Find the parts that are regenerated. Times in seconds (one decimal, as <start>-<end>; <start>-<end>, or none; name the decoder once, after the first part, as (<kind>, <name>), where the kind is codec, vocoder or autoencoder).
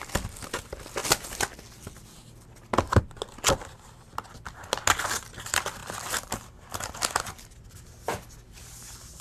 5.8-6.3 (vocoder, BigVGAN v2)